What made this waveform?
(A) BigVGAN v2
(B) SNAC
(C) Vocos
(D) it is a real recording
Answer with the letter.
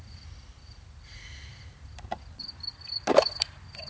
D